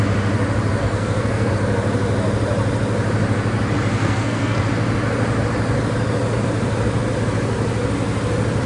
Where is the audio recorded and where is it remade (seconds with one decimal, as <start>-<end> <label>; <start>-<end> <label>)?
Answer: 0.0-0.8 recorded; 0.8-1.5 remade; 1.5-4.0 recorded; 4.0-4.6 remade; 4.6-8.7 recorded